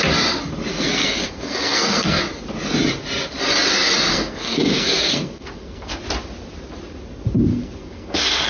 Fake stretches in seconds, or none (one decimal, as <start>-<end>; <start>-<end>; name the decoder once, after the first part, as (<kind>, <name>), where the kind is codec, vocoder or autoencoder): 0.7-2.2 (codec, SNAC); 4.1-6.0; 7.5-8.5